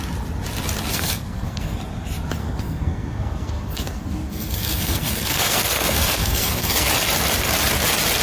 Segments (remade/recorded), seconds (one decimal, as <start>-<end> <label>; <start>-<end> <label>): 0.0-0.9 recorded; 0.9-1.8 remade; 1.8-2.4 recorded; 2.4-6.9 remade; 6.9-8.2 recorded

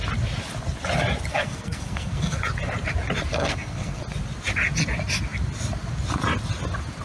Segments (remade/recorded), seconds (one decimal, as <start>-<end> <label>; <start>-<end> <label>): 0.0-1.3 recorded; 1.3-2.4 remade; 2.4-3.3 recorded; 3.3-4.0 remade; 4.0-7.0 recorded

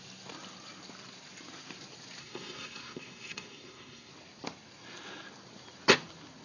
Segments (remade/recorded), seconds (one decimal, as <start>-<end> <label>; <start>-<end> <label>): 0.0-2.2 recorded; 2.2-4.1 remade; 4.1-6.4 recorded

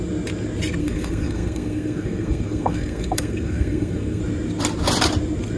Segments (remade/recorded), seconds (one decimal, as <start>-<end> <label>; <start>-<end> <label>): 0.0-0.8 recorded; 0.8-4.2 remade; 4.2-5.6 recorded

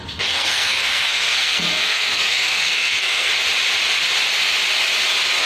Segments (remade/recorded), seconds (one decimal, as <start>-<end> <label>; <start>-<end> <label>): 0.0-3.3 remade; 3.3-5.5 recorded